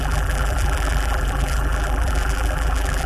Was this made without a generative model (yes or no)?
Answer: no